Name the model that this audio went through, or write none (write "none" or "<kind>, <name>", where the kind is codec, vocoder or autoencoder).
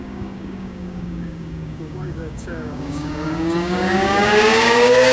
codec, DAC